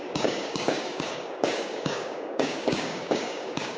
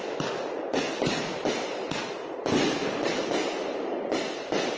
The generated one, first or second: first